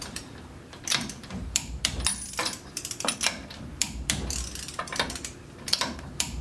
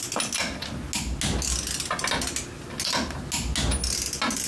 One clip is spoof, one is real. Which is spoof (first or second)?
first